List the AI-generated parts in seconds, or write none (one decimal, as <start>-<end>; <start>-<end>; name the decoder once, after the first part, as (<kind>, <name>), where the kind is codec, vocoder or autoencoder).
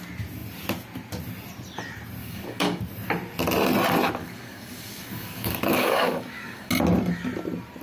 2.2-2.8 (codec, DAC); 4.2-6.7